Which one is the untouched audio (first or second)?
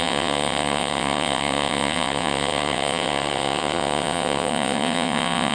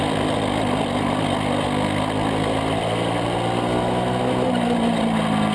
second